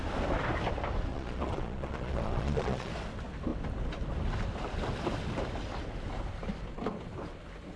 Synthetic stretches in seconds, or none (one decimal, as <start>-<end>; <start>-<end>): 1.1-2.9